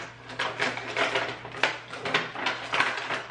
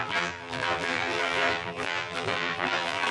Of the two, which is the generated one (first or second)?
second